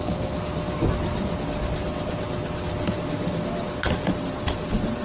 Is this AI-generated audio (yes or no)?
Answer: yes